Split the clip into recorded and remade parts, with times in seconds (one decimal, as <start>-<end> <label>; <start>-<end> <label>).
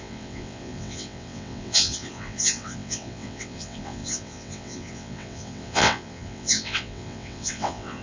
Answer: 0.0-8.0 remade